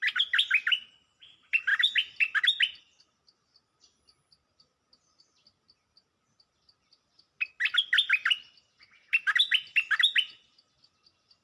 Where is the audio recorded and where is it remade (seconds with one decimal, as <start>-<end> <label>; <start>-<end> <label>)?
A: 0.0-11.4 recorded